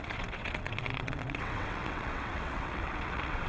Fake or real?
fake